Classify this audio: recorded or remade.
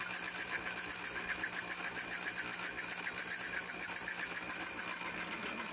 recorded